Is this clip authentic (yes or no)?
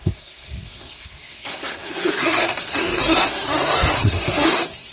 no